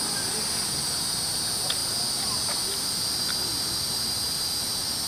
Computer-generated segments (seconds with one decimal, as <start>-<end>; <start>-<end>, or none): none